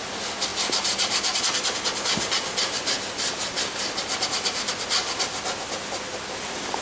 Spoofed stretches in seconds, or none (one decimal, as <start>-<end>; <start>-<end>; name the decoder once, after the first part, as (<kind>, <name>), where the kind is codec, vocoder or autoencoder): none